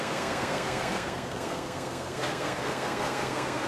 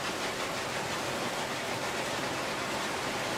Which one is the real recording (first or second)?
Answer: second